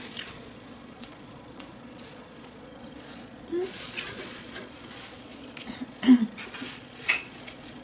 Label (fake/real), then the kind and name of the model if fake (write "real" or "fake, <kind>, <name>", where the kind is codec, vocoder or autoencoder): fake, vocoder, Vocos